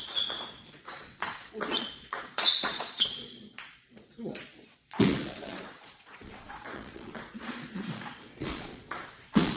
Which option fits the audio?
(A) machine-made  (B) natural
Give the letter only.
A